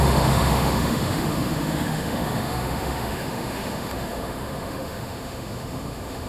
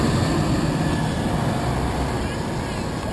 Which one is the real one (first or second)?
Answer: second